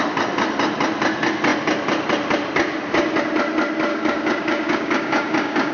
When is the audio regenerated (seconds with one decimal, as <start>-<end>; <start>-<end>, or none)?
3.9-5.7